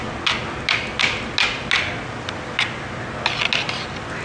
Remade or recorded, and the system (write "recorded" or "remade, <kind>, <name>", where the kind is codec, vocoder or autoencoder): recorded